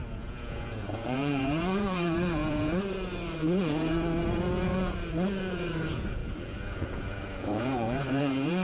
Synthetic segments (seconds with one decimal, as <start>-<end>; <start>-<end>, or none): 0.0-8.6